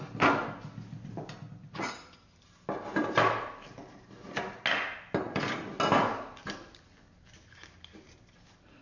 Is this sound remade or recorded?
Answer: recorded